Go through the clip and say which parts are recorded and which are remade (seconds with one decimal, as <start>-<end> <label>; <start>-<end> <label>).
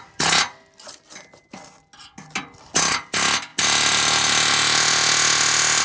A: 0.0-5.8 recorded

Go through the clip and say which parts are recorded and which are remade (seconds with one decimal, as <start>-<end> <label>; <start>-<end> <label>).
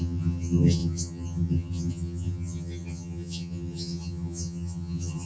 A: 0.0-5.3 remade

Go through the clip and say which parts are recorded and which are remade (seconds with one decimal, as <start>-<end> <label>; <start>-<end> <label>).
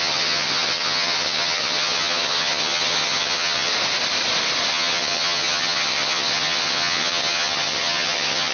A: 0.0-3.7 remade; 3.7-4.7 recorded; 4.7-8.5 remade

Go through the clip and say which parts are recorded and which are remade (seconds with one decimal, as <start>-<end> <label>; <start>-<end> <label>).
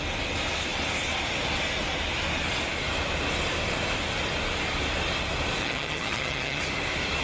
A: 0.0-5.6 recorded; 5.6-6.6 remade; 6.6-7.2 recorded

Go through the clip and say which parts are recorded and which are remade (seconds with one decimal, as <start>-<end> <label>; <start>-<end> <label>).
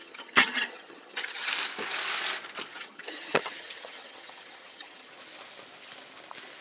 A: 0.0-1.5 remade; 1.5-2.7 recorded; 2.7-5.1 remade; 5.1-6.6 recorded